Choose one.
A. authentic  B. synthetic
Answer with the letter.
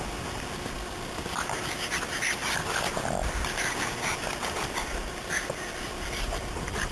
A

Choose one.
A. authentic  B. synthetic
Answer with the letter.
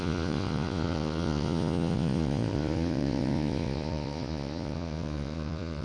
B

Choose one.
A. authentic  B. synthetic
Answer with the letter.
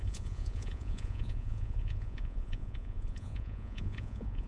B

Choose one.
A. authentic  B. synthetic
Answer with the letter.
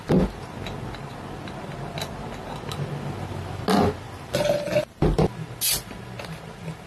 A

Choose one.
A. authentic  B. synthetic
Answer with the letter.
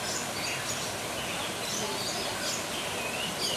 A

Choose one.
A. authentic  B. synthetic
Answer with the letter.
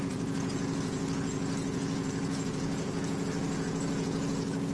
B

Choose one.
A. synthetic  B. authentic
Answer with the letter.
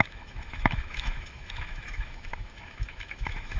A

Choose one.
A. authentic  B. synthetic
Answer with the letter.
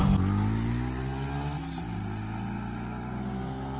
A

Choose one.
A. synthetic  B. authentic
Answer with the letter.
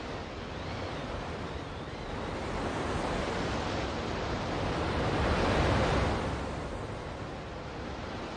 B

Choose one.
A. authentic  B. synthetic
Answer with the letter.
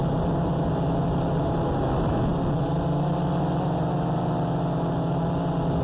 A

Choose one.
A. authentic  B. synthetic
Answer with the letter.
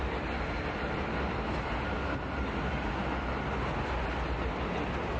A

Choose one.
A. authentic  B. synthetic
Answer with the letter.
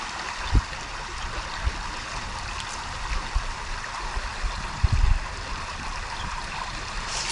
A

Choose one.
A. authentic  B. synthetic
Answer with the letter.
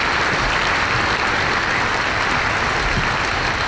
A